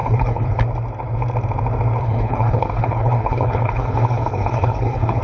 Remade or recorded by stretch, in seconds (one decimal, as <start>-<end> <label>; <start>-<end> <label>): 0.0-0.6 remade; 0.6-2.0 recorded; 2.0-5.2 remade